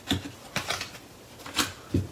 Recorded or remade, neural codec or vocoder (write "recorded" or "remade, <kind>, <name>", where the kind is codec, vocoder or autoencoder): recorded